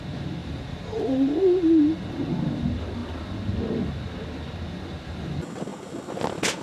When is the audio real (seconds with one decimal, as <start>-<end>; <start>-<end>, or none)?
0.0-0.4; 1.8-6.6